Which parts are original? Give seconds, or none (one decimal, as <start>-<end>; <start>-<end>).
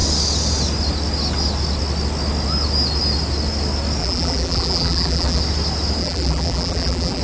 0.0-4.0; 5.4-6.0